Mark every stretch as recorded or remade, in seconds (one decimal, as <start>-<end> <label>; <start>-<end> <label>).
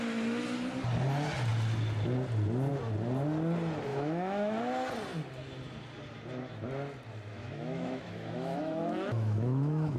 0.0-3.9 recorded; 3.9-4.6 remade; 4.6-7.3 recorded; 7.3-10.0 remade